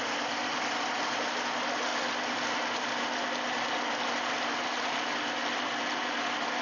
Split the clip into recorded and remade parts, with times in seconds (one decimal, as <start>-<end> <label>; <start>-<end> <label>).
0.0-6.6 recorded